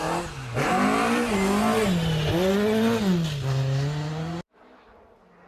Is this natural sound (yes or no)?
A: yes